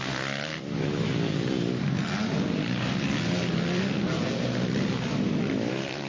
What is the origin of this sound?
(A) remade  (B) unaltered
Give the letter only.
B